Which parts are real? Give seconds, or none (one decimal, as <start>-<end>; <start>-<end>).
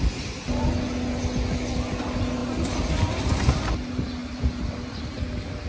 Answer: 0.0-5.7